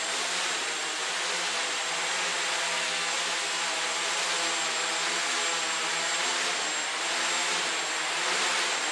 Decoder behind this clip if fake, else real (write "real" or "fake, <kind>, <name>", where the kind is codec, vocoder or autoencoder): real